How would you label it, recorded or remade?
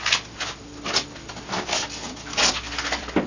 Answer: recorded